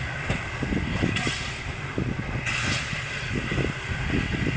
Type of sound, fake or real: real